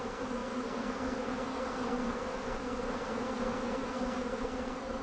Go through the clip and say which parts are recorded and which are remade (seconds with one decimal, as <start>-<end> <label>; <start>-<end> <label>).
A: 0.0-5.0 remade